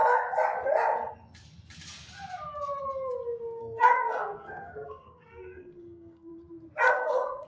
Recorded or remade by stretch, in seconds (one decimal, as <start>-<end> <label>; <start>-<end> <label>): 0.0-3.6 recorded; 3.6-6.3 remade; 6.3-6.9 recorded; 6.9-7.5 remade